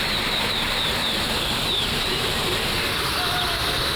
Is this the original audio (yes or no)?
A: yes